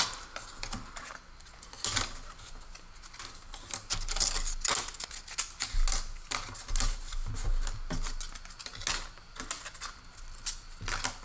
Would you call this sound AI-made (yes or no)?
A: no